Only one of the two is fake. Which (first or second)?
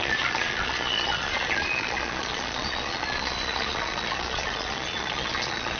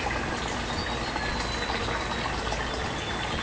first